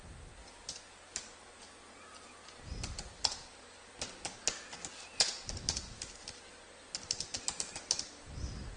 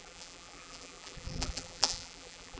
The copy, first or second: second